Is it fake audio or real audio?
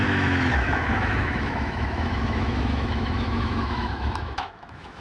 fake